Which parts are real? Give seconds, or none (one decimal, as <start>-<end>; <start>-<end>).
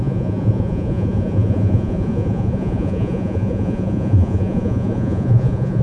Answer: none